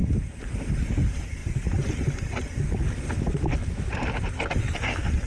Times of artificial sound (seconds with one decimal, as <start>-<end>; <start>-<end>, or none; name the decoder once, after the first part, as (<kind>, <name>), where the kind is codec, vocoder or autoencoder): none